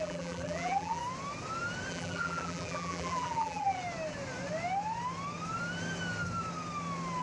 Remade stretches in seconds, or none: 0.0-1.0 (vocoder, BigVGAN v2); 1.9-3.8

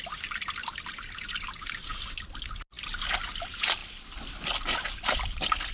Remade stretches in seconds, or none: none

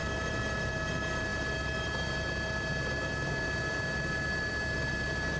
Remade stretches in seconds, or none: 0.0-0.7 (vocoder, BigVGAN v2)

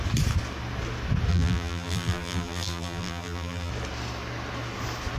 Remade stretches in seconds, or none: 1.3-3.7 (vocoder, BigVGAN v2)

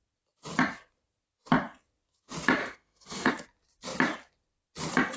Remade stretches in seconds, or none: 2.6-3.3 (autoencoder, DAC-VAE)

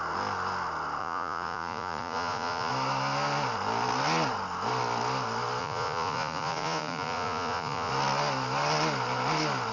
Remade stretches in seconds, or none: 1.0-2.7 (vocoder, Vocos); 5.6-7.9